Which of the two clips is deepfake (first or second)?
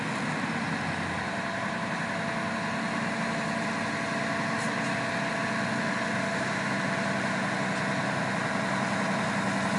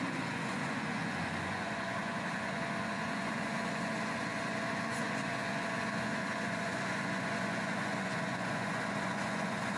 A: second